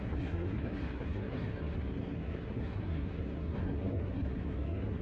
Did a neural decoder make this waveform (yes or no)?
yes